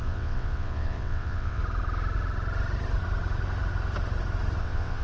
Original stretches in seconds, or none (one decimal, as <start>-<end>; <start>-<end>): 1.6-4.6